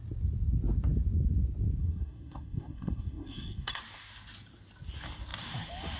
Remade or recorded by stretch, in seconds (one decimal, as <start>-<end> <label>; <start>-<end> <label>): 0.0-1.8 recorded; 1.8-3.8 remade; 3.8-6.0 recorded